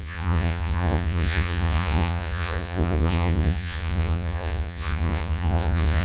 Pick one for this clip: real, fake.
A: fake